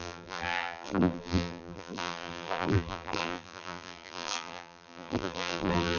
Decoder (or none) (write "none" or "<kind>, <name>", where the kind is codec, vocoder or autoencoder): vocoder, BigVGAN v2